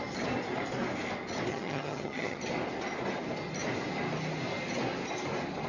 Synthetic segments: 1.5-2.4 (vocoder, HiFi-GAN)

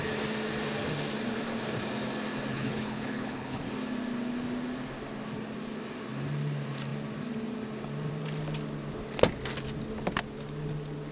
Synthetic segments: 2.5-3.7 (codec, HILCodec)

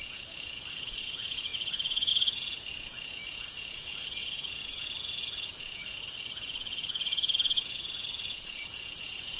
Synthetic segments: 0.0-9.4 (vocoder, Vocos)

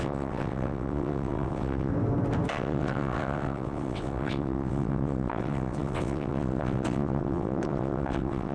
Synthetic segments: 0.0-1.9 (vocoder, WaveNeXt); 2.5-8.5

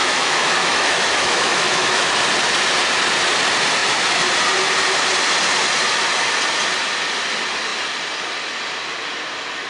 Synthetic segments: 0.0-2.1 (autoencoder, DAC-VAE)

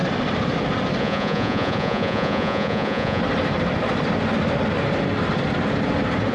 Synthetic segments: 1.0-3.2 (vocoder, Vocos)